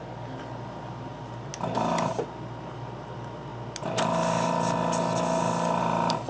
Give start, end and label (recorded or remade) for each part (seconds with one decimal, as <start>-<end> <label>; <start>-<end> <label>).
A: 0.0-6.3 recorded